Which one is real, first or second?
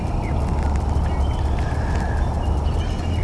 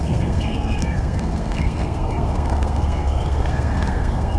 first